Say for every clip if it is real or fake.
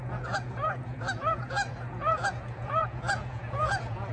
fake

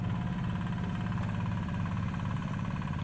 real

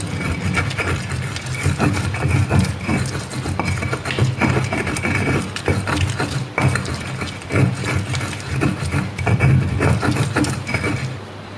real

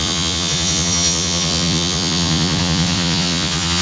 fake